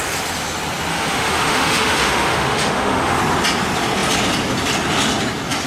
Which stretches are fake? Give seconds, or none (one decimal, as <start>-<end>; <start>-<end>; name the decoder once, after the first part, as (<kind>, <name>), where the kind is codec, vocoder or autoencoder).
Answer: 0.9-3.2 (autoencoder, DAC-VAE)

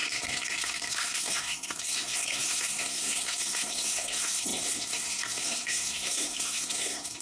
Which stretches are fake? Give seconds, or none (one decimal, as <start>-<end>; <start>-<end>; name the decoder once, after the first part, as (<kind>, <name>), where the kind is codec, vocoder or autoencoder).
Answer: 0.0-7.2 (codec, SNAC)

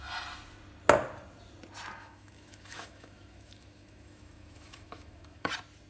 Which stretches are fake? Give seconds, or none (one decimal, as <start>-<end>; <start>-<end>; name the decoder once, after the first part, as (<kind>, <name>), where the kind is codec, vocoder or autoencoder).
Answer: 2.0-5.5 (autoencoder, DAC-VAE)

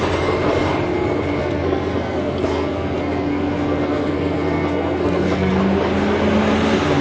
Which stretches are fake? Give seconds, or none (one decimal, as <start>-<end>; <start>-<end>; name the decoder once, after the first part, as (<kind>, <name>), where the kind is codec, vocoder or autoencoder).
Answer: 1.4-5.6 (codec, SNAC)